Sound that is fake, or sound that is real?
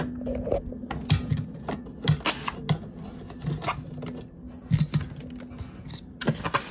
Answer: real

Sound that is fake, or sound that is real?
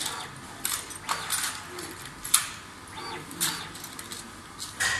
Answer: real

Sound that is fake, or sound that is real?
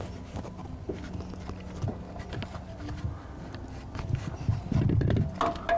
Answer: real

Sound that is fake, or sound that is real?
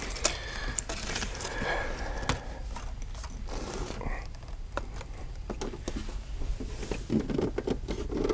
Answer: real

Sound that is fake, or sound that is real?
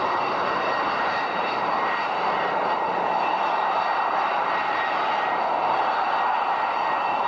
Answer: fake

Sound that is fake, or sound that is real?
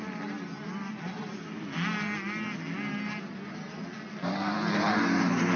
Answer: real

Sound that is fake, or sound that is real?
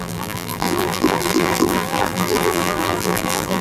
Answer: fake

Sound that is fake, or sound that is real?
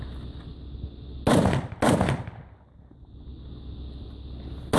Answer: real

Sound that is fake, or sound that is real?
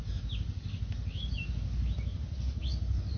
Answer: real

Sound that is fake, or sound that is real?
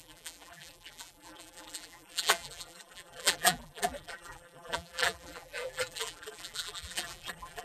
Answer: fake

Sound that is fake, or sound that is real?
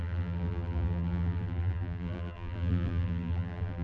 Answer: fake